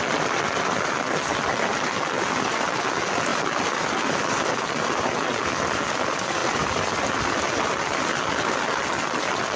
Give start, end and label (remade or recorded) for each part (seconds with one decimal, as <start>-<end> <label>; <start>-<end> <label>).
0.0-3.3 recorded; 3.3-4.1 remade; 4.1-6.4 recorded; 6.4-7.0 remade; 7.0-9.6 recorded